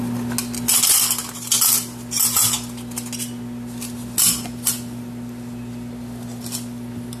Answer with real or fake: real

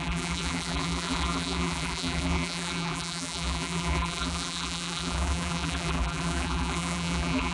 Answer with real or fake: fake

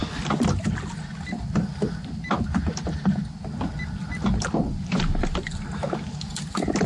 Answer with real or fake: real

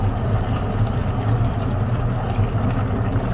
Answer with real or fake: real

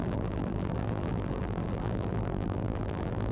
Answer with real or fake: fake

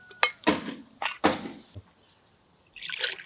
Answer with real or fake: real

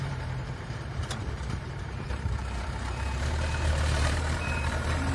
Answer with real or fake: fake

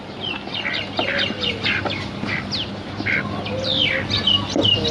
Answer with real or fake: real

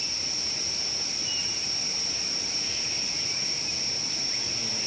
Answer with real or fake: real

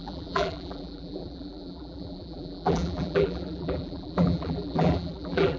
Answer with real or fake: fake